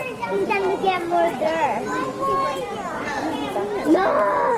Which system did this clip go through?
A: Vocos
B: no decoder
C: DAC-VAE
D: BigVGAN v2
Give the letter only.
D